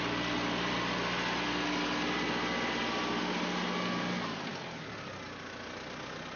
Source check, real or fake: real